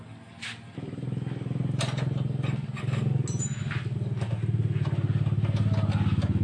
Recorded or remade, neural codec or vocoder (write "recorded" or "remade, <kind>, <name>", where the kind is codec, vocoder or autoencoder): recorded